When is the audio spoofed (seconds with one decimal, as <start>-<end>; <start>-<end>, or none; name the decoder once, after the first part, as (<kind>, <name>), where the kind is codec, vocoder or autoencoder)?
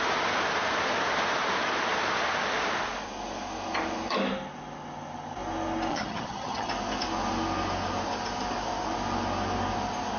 5.9-6.7 (vocoder, HiFi-GAN)